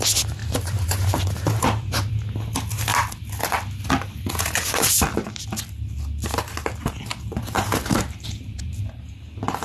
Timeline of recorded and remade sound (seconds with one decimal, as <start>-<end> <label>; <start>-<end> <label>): 0.0-0.4 recorded; 0.4-2.1 remade; 2.1-7.4 recorded; 7.4-9.0 remade; 9.0-9.6 recorded